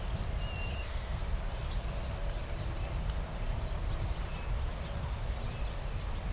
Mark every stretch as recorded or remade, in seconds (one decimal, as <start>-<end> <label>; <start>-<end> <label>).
0.0-0.7 recorded; 0.7-1.2 remade; 1.2-6.3 recorded